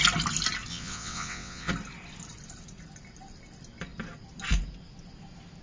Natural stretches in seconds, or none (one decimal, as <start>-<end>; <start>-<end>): 0.0-0.7; 1.7-5.6